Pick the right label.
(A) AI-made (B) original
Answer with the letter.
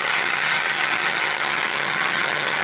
A